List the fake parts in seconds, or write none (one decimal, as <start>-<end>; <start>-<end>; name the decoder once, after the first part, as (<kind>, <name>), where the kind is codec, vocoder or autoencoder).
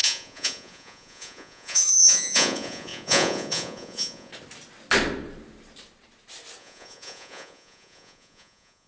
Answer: 0.0-4.3 (vocoder, Vocos); 6.6-8.9